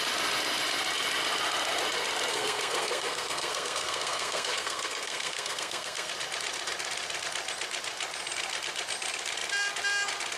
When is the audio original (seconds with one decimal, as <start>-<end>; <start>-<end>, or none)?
0.0-2.3; 6.1-10.4